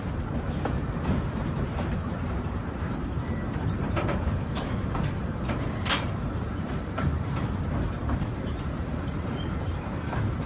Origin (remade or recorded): remade